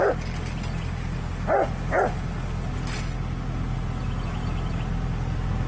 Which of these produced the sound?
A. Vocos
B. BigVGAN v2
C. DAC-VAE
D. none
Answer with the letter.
D